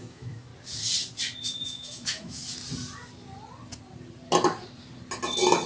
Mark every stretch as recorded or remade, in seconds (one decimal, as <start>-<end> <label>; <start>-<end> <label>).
0.0-0.5 remade; 0.5-1.4 recorded; 1.4-2.4 remade; 2.4-5.7 recorded